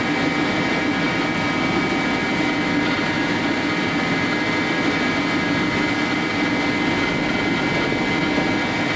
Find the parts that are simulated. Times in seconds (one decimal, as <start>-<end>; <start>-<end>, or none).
none